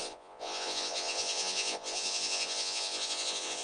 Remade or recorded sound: remade